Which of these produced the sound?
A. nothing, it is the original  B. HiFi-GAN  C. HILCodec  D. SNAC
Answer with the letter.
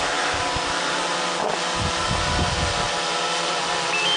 A